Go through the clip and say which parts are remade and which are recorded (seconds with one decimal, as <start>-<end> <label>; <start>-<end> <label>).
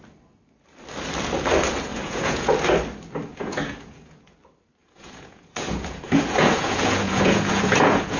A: 0.0-1.9 recorded; 1.9-2.5 remade; 2.5-3.3 recorded; 3.3-4.3 remade; 4.3-4.8 recorded; 4.8-8.2 remade